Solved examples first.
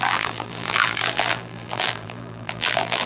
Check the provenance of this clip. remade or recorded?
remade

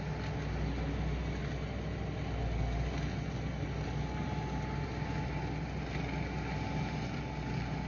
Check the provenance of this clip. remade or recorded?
recorded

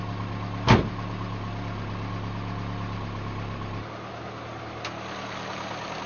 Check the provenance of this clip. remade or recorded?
recorded